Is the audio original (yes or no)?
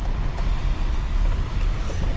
yes